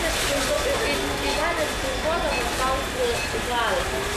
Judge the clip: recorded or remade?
recorded